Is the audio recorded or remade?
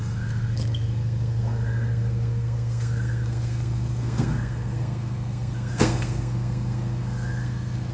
remade